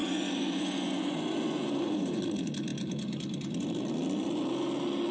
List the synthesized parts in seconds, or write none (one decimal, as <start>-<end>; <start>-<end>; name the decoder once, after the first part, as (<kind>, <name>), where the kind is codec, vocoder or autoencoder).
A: 0.0-2.2 (vocoder, Vocos)